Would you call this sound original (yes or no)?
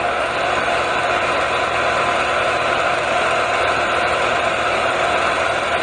yes